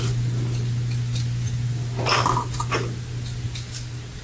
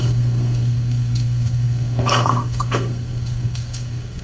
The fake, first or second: second